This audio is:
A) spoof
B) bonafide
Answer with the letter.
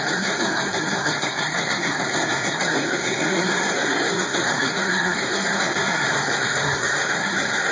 A